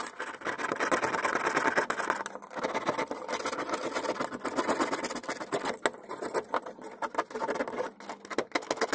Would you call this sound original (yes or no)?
yes